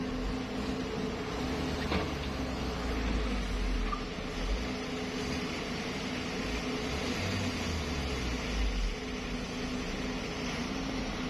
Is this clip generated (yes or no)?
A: no